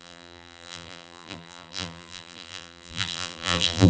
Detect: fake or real fake